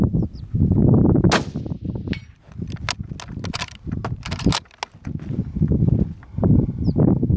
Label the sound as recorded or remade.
recorded